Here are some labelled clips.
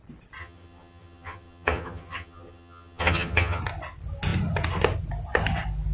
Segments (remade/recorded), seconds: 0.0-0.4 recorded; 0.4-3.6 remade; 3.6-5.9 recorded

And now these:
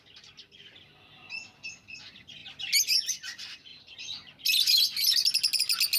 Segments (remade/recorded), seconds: 0.0-6.0 recorded